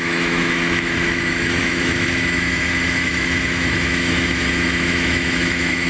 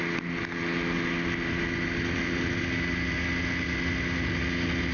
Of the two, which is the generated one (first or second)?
first